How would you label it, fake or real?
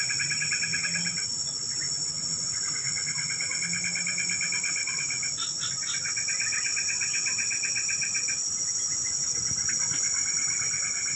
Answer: real